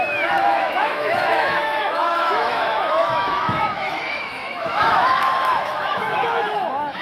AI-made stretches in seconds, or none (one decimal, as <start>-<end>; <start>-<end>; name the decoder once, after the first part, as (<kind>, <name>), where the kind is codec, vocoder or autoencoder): 0.0-7.0 (autoencoder, DAC-VAE)